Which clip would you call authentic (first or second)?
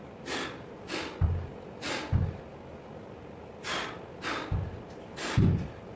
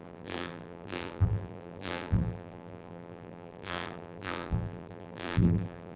first